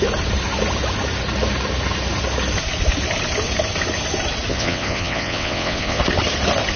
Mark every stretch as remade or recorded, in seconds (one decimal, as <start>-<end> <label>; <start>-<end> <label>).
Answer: 0.0-4.5 recorded; 4.5-6.0 remade; 6.0-6.8 recorded